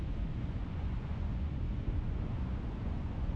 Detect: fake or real fake